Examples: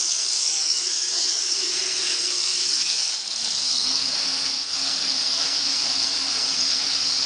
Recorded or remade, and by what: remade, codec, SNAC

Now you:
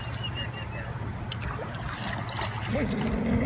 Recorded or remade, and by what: recorded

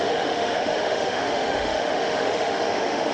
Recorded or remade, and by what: remade, autoencoder, DAC-VAE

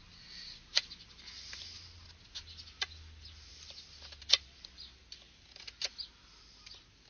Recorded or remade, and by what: recorded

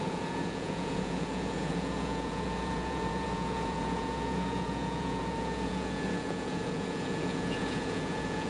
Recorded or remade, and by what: remade, vocoder, Vocos